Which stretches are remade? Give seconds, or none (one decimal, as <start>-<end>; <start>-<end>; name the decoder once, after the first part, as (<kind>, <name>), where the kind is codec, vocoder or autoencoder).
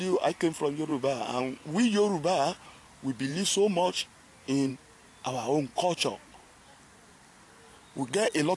3.3-4.7 (vocoder, Vocos)